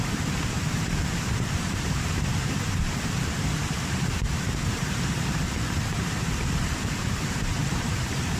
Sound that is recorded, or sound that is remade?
remade